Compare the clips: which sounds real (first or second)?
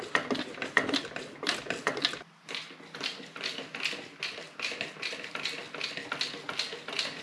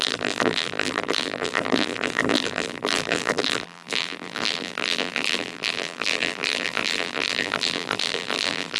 first